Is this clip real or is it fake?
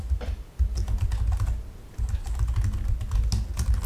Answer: real